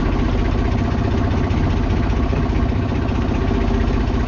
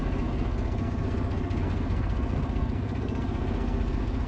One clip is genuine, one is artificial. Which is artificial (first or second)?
second